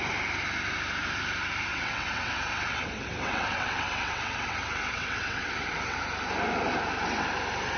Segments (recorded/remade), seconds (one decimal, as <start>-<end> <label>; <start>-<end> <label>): 0.0-1.7 recorded; 1.7-6.0 remade; 6.0-7.8 recorded